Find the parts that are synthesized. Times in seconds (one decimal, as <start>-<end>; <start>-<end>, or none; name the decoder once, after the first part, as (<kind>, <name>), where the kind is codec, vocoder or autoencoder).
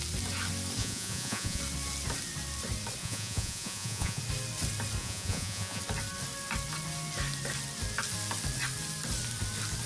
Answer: 0.8-1.6 (vocoder, Vocos); 3.0-4.2; 5.0-5.8